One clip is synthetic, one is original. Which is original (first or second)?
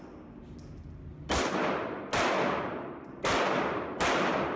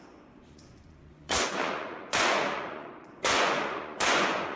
first